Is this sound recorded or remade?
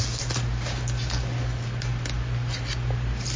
recorded